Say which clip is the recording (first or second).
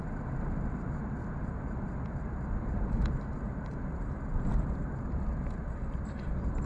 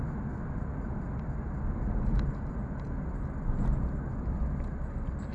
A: second